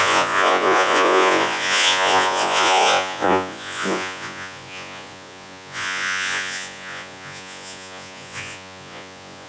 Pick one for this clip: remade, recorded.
remade